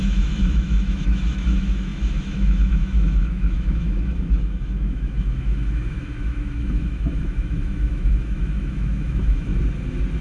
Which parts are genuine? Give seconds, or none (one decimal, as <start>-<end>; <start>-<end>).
9.5-10.2